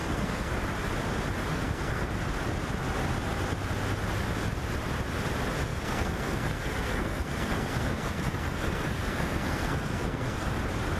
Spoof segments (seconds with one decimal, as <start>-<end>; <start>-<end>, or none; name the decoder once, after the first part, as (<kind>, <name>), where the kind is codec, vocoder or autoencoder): 0.0-0.5 (codec, SNAC); 1.5-2.1; 5.7-10.5